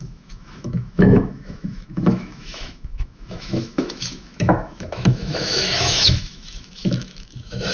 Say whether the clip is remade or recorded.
remade